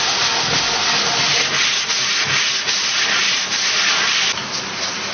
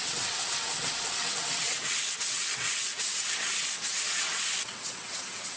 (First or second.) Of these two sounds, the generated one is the second